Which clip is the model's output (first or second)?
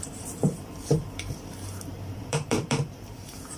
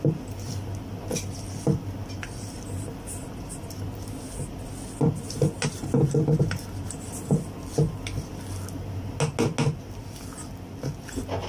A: first